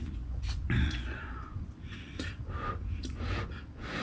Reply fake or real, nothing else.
fake